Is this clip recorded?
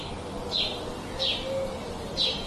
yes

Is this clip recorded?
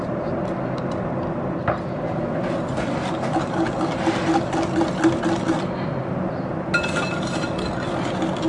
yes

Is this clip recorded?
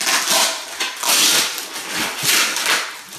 yes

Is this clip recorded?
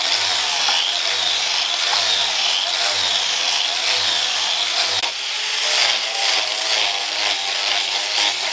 yes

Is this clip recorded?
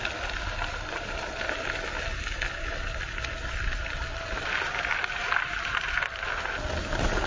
yes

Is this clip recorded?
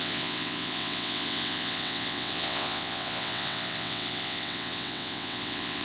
no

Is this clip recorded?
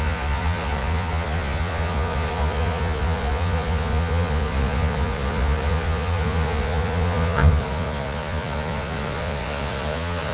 no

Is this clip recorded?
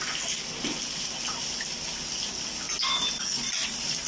yes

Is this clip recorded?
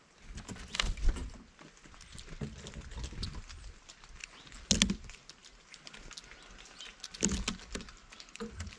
yes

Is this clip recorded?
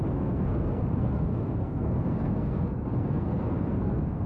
no